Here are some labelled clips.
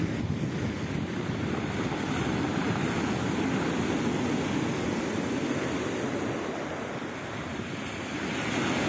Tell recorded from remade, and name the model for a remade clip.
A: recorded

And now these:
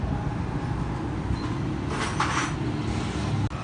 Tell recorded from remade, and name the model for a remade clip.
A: recorded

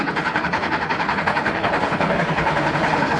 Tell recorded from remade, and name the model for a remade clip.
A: remade, codec, HILCodec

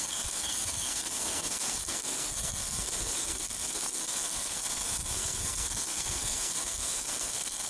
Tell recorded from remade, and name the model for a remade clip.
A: remade, codec, SNAC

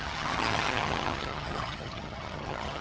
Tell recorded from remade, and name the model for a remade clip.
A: remade, vocoder, HiFi-GAN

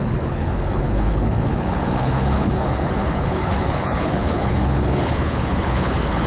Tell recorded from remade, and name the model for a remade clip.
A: remade, codec, HILCodec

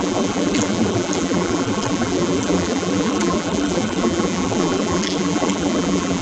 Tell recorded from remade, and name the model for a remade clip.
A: remade, vocoder, BigVGAN v2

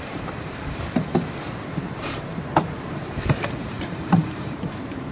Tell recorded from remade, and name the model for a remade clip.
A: remade, vocoder, BigVGAN v2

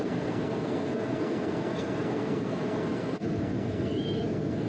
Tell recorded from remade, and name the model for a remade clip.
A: remade, codec, SNAC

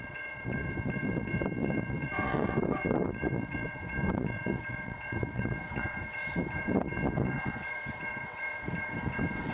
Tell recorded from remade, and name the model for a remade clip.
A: remade, vocoder, WaveNeXt